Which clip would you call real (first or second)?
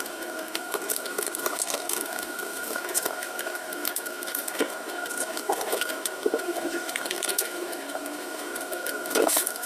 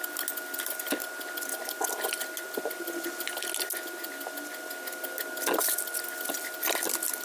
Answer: second